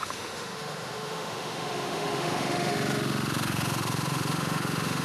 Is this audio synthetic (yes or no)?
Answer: yes